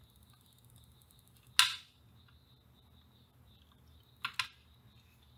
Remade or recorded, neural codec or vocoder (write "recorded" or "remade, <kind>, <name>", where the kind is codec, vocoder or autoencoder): recorded